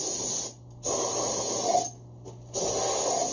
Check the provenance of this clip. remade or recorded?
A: recorded